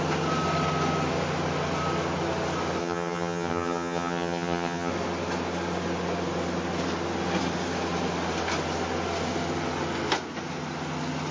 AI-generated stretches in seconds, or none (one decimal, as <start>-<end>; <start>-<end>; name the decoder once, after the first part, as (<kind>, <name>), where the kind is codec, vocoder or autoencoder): 2.8-4.9 (vocoder, HiFi-GAN)